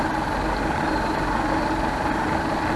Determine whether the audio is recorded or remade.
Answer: recorded